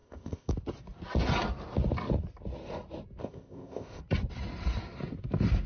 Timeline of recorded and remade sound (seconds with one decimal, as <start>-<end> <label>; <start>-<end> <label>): 0.0-0.5 remade; 0.5-3.2 recorded; 3.2-4.0 remade; 4.0-5.7 recorded